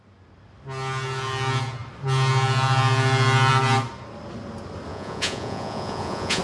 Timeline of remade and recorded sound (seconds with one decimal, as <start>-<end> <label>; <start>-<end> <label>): 0.0-4.9 recorded; 4.9-6.4 remade